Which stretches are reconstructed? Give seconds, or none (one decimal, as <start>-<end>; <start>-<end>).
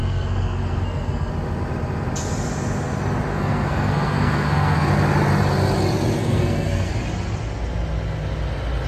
0.0-1.3; 3.3-4.9; 6.2-6.9